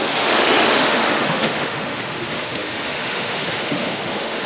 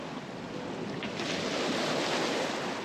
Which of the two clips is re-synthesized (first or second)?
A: first